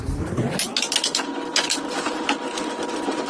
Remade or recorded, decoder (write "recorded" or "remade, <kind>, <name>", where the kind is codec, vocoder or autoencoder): recorded